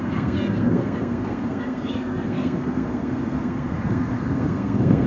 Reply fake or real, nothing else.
fake